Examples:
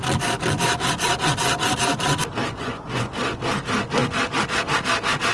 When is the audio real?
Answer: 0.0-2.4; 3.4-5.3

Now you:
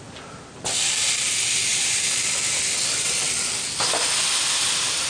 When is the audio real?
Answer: 0.0-5.1

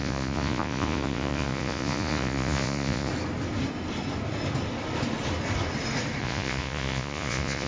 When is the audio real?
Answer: 3.1-6.2